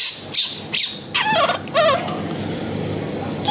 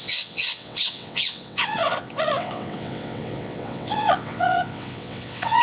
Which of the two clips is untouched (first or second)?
first